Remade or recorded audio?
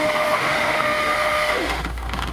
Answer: remade